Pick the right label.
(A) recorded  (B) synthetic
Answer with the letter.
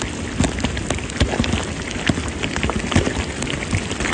A